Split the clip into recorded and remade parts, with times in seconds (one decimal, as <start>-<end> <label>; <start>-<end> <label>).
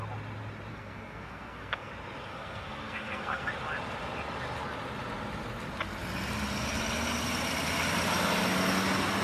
0.0-0.7 recorded; 0.7-1.9 remade; 1.9-2.3 recorded; 2.3-3.5 remade; 3.5-9.2 recorded